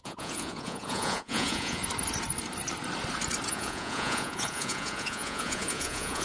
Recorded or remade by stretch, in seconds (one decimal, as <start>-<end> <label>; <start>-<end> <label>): 0.0-1.8 remade; 1.8-3.5 recorded; 3.5-6.2 remade